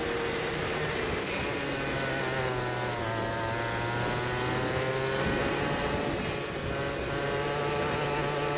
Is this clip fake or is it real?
real